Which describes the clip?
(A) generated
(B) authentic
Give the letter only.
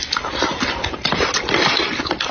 A